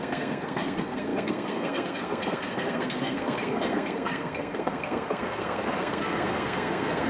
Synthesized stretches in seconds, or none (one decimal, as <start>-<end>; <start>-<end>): 0.0-7.1